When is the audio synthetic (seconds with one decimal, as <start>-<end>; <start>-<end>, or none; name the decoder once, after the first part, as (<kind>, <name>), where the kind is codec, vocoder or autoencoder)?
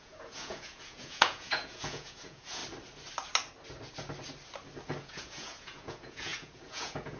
0.0-2.6 (vocoder, Vocos); 5.0-7.2